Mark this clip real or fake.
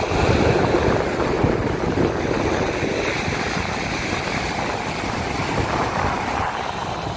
real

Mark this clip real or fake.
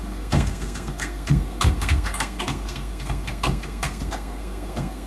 fake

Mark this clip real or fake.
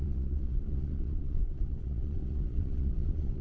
fake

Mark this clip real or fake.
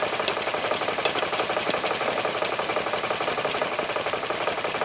real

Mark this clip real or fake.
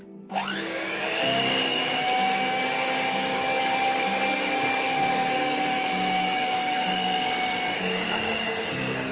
fake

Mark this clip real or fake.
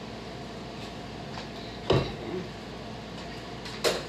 real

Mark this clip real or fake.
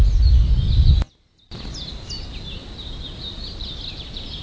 real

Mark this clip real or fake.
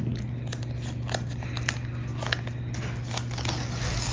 real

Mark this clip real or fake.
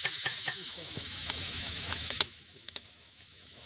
fake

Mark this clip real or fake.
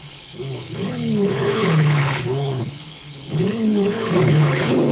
fake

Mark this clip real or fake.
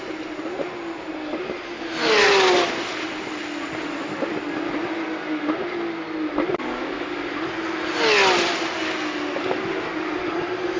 real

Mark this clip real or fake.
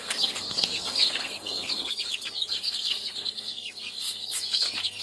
fake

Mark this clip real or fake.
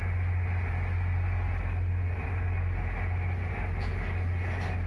real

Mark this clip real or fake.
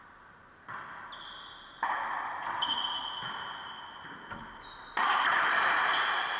real